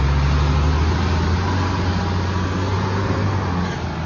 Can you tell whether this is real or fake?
real